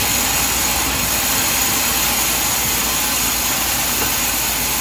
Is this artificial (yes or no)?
no